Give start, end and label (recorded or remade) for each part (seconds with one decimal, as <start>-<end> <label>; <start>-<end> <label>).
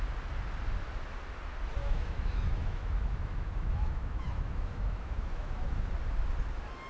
0.0-1.8 recorded; 1.8-5.9 remade; 5.9-6.9 recorded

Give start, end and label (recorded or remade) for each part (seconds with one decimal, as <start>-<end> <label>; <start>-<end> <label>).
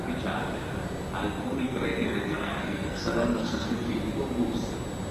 0.0-1.2 recorded; 1.2-3.9 remade; 3.9-5.1 recorded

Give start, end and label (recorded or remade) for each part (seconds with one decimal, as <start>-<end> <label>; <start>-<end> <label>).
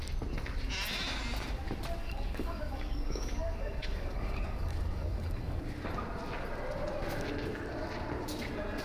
0.0-2.0 recorded; 2.0-5.6 remade; 5.6-8.8 recorded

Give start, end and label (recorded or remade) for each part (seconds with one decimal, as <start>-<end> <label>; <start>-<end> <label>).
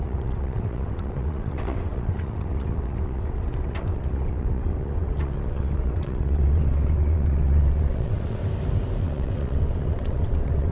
0.0-8.4 remade; 8.4-9.0 recorded; 9.0-10.7 remade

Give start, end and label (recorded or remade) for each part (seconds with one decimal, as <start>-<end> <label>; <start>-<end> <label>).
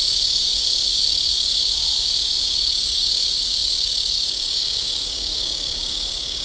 0.0-6.4 remade